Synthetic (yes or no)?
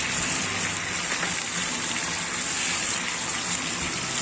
no